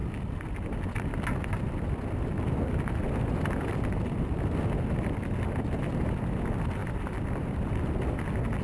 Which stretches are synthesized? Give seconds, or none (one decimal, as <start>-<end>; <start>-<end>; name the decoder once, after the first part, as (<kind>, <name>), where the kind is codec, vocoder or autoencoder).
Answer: none